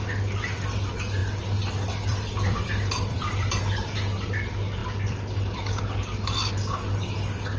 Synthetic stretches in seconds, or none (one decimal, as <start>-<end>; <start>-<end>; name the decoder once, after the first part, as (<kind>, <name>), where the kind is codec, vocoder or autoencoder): 2.1-3.6 (vocoder, BigVGAN v2); 4.8-5.8